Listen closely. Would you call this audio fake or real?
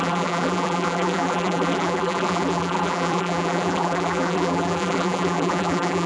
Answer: fake